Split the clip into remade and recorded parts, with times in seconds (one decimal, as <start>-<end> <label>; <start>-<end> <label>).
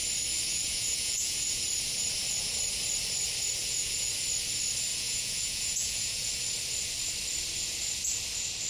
0.0-0.5 recorded; 0.5-1.6 remade; 1.6-3.6 recorded; 3.6-4.1 remade; 4.1-4.9 recorded; 4.9-6.3 remade; 6.3-8.7 recorded